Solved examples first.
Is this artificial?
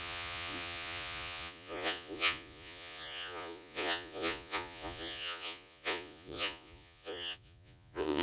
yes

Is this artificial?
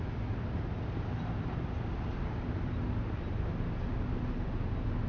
no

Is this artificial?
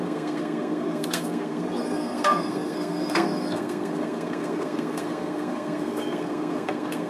yes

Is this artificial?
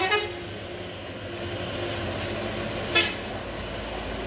no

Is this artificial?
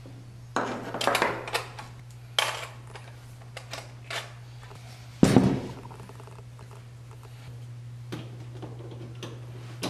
no